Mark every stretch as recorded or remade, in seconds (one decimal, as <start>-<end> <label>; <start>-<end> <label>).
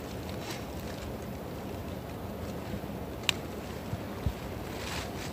0.0-1.8 recorded; 1.8-2.3 remade; 2.3-5.3 recorded